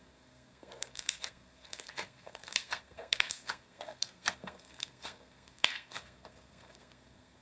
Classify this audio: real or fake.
fake